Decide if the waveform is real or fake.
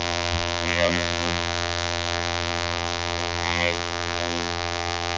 fake